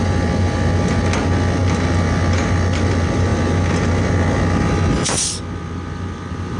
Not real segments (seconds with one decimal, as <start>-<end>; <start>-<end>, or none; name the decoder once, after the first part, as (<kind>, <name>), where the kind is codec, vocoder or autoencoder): none